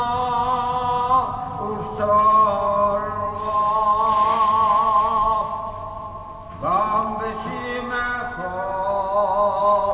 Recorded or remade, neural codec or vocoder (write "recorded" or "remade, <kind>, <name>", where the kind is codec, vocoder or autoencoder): recorded